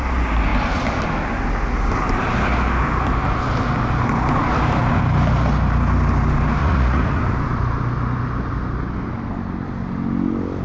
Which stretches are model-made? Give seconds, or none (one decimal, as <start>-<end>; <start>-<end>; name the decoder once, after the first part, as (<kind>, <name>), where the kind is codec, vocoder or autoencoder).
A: 6.6-7.2 (vocoder, Vocos)